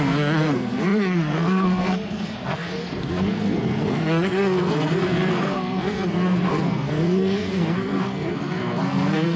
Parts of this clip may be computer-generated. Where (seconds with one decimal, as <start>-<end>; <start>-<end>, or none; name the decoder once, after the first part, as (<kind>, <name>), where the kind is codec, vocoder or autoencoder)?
0.0-9.4 (codec, SNAC)